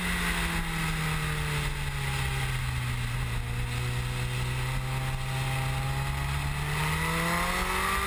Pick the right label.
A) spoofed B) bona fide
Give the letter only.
B